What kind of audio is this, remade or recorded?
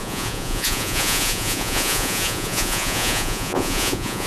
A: remade